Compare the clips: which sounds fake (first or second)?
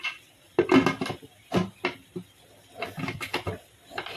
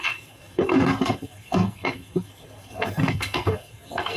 second